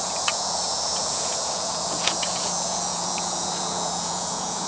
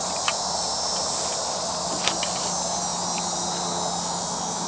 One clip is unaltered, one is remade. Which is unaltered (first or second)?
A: second